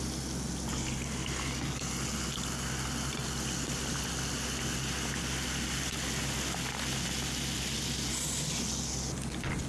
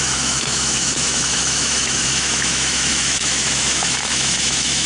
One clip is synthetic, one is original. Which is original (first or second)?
first